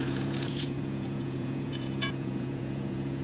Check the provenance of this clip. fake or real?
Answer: fake